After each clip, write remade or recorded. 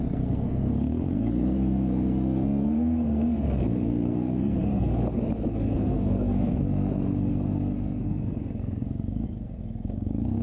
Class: remade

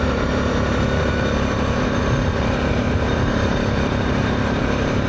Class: remade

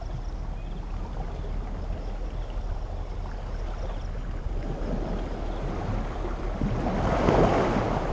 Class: recorded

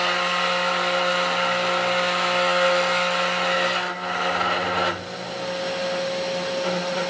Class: recorded